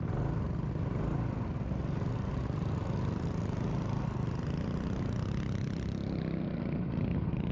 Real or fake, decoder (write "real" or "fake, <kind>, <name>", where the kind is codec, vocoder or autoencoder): real